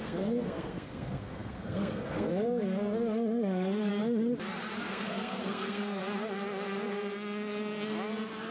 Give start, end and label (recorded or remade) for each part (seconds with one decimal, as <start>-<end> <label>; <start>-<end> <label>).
0.0-3.9 remade; 3.9-4.9 recorded; 4.9-6.0 remade; 6.0-8.5 recorded